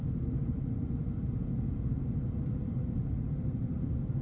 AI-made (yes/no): no